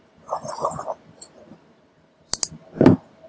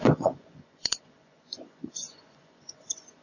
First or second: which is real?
first